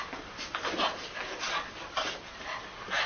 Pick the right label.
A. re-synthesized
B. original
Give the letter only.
B